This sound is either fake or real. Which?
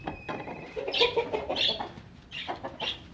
real